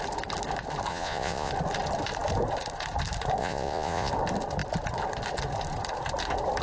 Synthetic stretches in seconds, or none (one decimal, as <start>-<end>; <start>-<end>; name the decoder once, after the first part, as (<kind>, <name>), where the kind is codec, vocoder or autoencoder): 0.9-1.5 (vocoder, Vocos); 3.4-4.1